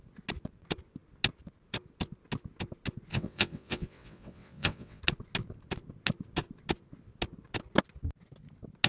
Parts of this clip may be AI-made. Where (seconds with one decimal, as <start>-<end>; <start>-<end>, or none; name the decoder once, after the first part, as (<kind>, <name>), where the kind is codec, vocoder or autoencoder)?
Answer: 3.1-5.0 (vocoder, WaveNeXt)